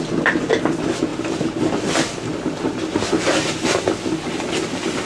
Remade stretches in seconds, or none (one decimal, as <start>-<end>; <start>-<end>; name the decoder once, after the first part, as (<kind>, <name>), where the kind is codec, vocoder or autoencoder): 1.1-1.7 (vocoder, BigVGAN v2)